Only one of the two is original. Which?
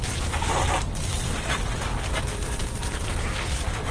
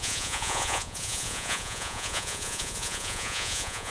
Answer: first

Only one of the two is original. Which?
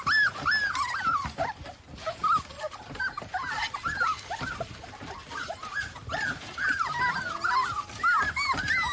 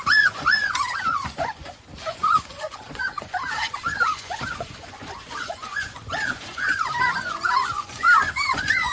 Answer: first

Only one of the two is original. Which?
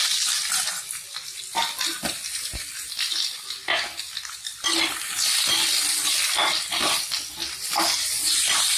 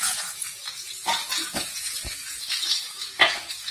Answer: first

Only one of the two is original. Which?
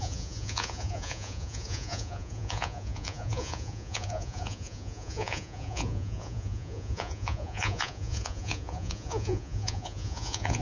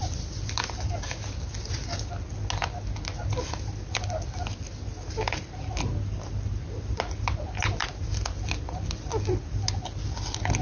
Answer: second